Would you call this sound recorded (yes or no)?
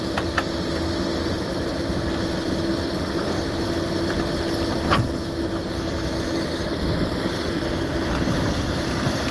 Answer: yes